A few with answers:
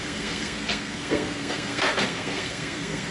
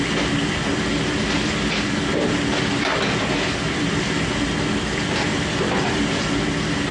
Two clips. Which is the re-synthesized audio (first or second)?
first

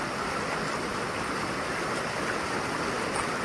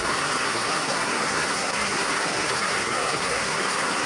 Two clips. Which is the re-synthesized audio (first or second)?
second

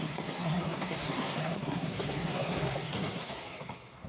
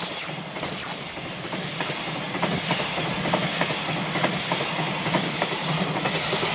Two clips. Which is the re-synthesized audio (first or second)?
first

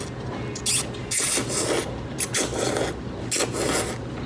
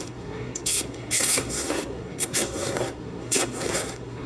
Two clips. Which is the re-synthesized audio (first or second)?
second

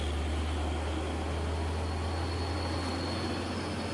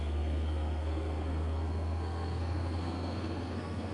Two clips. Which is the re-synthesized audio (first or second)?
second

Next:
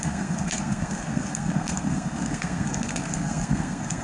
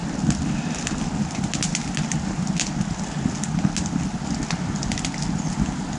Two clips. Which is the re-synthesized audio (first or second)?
first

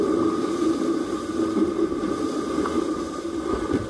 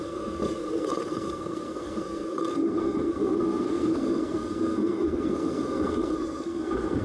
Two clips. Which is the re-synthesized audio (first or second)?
second